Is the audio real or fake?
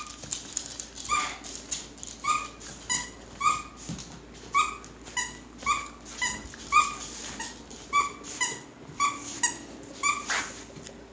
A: real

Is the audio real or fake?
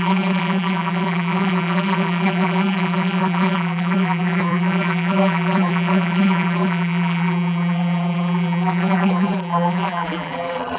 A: fake